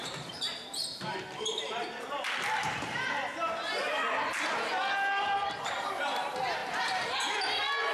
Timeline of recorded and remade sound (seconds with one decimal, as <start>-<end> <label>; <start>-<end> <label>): 0.0-2.9 remade; 2.9-6.6 recorded; 6.6-7.2 remade; 7.2-7.9 recorded